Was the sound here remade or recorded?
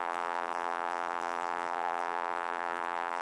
remade